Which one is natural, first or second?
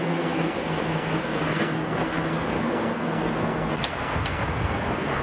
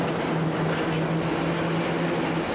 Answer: second